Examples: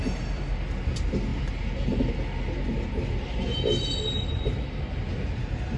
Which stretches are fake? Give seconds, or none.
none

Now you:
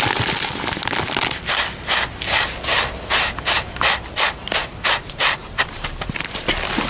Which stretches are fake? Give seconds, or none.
5.4-6.4 (vocoder, BigVGAN v2)